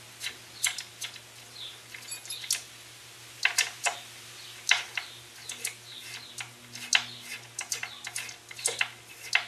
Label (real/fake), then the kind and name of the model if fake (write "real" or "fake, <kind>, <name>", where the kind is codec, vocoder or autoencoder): real